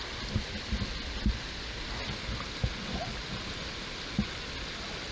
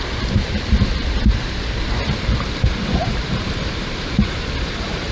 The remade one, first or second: second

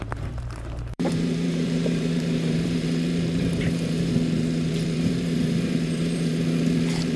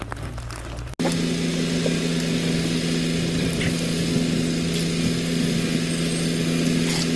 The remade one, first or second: first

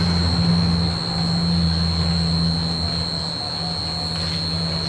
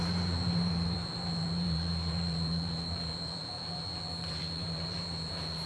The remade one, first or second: second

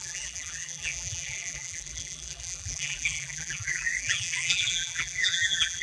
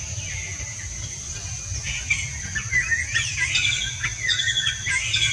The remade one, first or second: first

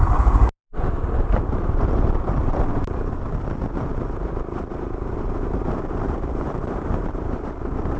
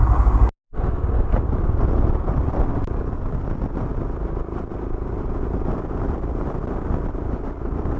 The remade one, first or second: first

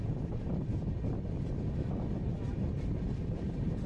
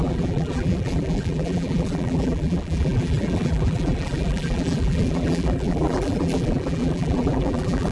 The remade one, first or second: second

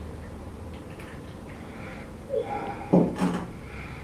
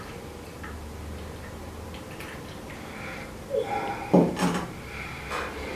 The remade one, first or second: first